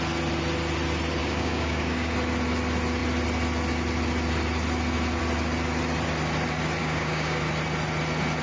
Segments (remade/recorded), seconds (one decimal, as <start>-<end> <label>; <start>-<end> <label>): 0.0-1.2 recorded; 1.2-2.1 remade; 2.1-6.8 recorded; 6.8-7.4 remade; 7.4-8.4 recorded